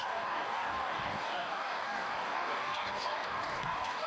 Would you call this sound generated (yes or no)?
yes